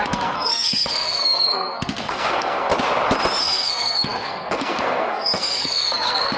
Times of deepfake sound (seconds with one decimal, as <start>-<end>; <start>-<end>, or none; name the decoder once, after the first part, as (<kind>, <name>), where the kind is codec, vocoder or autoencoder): 0.0-2.7 (codec, SNAC); 3.4-6.4